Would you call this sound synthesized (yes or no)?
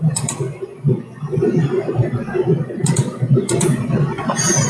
yes